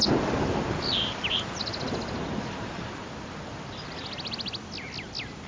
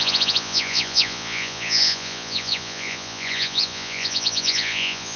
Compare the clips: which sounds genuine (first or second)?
first